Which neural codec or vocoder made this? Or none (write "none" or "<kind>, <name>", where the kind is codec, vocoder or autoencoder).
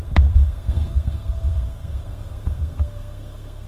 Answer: codec, SNAC